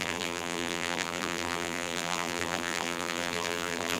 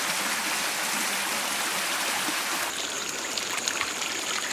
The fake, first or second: first